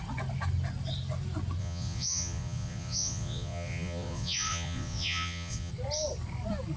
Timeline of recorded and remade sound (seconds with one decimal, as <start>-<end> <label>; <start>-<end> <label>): 0.0-1.6 recorded; 1.6-5.7 remade; 5.7-6.8 recorded

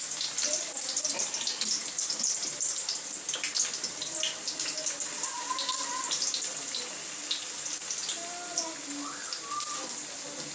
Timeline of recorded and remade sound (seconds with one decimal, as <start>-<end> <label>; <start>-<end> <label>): 0.0-10.5 recorded

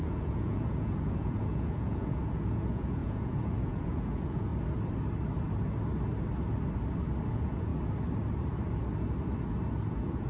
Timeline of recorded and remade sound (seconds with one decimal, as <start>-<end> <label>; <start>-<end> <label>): 0.0-4.5 remade; 4.5-7.3 recorded; 7.3-7.7 remade; 7.7-9.9 recorded; 9.9-10.3 remade